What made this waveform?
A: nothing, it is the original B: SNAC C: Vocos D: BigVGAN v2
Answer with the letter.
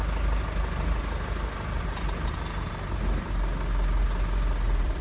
A